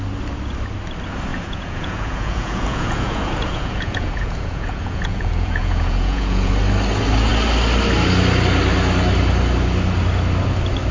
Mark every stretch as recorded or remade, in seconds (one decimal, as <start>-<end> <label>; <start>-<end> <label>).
0.0-1.3 recorded; 1.3-6.5 remade; 6.5-10.9 recorded